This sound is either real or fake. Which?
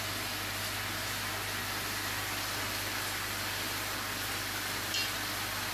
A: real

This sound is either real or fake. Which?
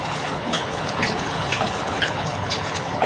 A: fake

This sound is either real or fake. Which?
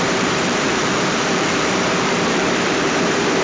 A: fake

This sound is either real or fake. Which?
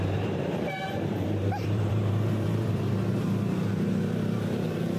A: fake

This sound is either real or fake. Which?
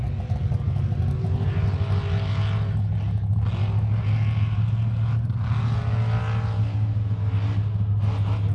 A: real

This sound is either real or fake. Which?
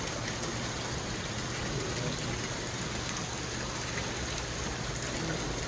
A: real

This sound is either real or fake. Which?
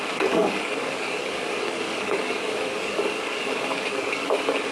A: fake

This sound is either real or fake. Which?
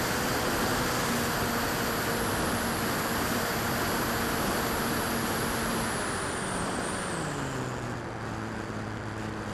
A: real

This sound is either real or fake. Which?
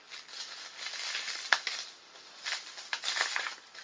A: real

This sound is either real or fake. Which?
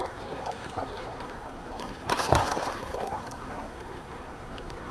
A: fake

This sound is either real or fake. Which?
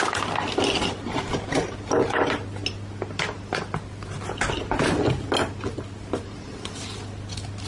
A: real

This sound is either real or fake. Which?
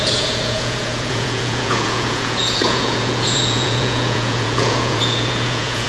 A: fake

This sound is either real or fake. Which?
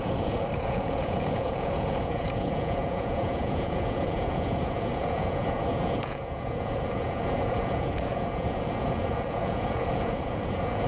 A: fake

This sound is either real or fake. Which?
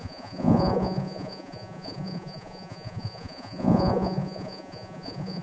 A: fake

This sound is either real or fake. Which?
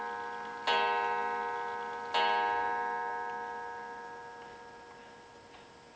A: real